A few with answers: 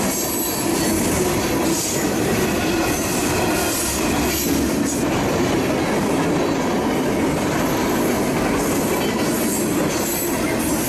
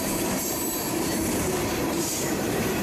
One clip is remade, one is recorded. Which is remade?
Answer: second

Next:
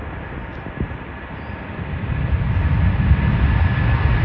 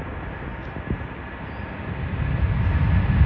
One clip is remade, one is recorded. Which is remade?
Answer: first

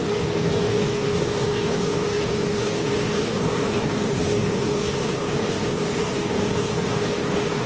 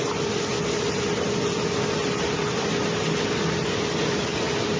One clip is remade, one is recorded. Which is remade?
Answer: first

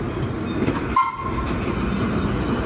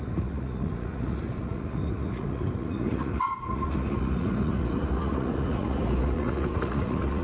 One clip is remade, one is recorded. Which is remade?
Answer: second